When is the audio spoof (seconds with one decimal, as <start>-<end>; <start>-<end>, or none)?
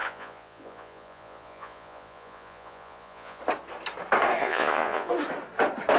0.0-3.4; 4.4-5.1